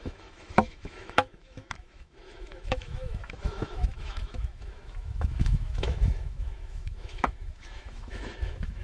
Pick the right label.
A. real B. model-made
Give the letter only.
B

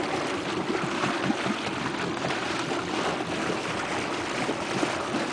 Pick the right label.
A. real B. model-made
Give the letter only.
A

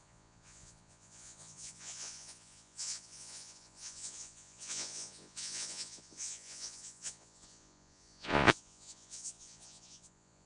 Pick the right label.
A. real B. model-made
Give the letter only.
B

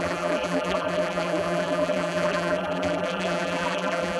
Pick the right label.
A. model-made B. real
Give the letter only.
A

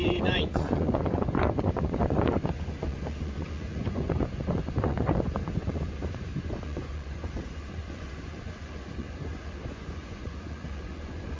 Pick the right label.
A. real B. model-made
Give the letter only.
B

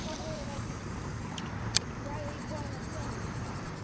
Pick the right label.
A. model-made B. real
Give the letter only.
A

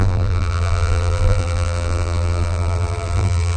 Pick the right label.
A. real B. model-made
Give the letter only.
B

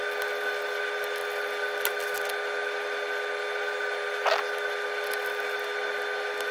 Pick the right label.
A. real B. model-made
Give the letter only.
A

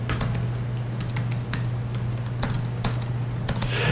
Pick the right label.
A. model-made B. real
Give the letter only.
B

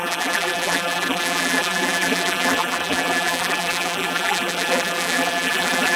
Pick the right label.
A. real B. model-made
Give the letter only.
B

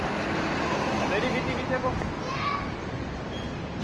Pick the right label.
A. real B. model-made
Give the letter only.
A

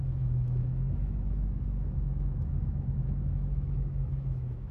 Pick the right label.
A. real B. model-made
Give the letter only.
B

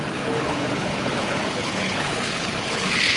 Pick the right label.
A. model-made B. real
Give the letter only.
A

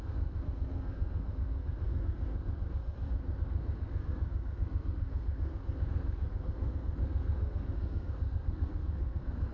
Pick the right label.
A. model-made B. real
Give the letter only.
A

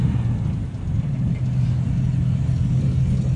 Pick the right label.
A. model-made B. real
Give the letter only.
B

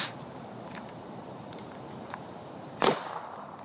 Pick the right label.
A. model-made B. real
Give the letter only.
A